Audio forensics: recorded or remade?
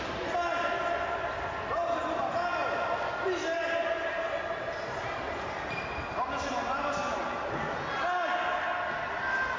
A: recorded